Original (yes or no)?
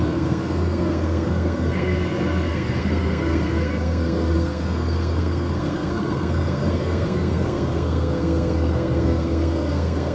no